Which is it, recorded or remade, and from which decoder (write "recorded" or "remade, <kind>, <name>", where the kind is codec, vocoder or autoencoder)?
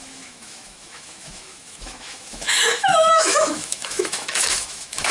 remade, autoencoder, DAC-VAE